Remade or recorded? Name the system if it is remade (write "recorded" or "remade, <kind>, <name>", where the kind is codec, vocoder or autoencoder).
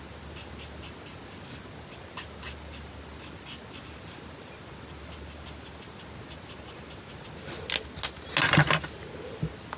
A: recorded